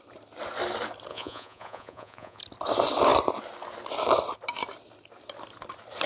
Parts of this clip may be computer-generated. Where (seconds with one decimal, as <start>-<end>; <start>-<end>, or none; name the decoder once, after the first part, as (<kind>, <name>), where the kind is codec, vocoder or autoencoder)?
1.1-2.4 (vocoder, Vocos)